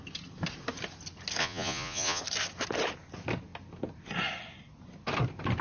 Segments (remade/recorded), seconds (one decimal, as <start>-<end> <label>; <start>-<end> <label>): 0.0-1.4 recorded; 1.4-2.2 remade; 2.2-5.6 recorded